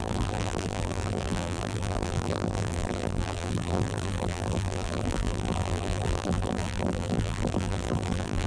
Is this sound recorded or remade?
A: remade